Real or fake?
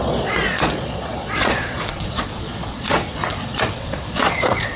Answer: fake